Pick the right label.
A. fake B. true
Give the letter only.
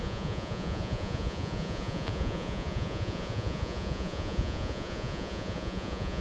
A